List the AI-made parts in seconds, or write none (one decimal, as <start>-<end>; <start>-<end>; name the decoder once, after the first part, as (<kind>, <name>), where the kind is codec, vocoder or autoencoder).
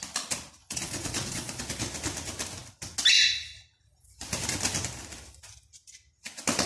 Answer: 0.6-1.6 (vocoder, Vocos)